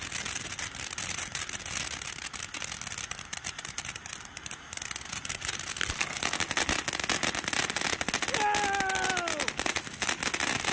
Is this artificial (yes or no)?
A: no